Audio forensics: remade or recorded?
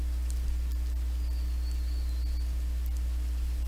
recorded